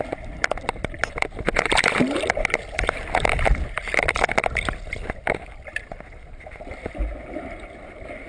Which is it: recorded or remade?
recorded